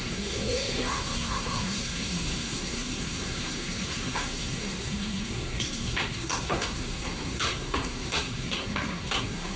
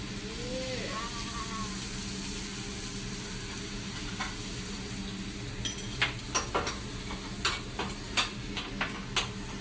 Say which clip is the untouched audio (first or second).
second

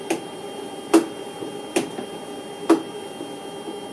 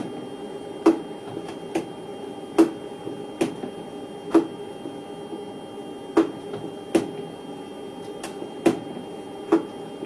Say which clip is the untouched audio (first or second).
second